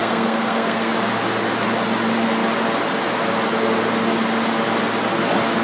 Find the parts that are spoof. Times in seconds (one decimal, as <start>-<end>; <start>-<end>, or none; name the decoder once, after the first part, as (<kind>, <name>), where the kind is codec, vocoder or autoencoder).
0.0-0.9 (codec, SNAC)